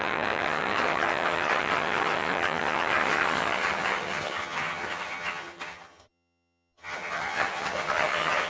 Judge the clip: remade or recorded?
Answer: remade